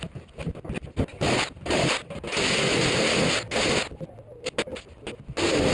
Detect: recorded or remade recorded